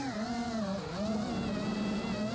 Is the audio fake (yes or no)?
no